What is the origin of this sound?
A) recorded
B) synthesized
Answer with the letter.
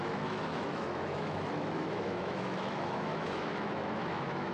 B